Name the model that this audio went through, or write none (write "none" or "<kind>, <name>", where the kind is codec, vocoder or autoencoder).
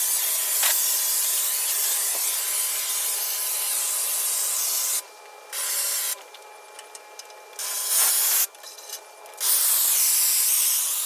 none